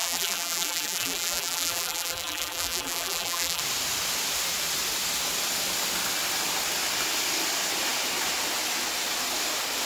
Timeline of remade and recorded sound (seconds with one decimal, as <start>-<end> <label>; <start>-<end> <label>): 0.0-3.6 remade; 3.6-9.8 recorded